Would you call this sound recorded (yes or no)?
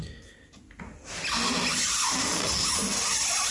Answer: yes